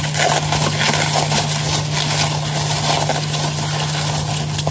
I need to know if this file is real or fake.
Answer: real